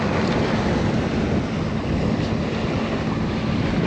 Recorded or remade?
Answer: recorded